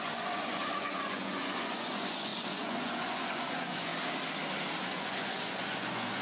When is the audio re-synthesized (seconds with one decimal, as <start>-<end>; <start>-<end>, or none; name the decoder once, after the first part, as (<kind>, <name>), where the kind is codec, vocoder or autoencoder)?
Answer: 0.0-3.9 (vocoder, Vocos); 4.8-6.2